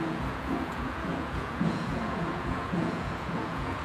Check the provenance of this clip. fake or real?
fake